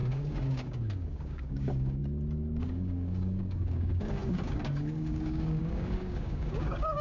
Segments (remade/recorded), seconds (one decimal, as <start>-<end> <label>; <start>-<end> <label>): 0.0-2.0 remade; 2.0-2.6 recorded; 2.6-7.0 remade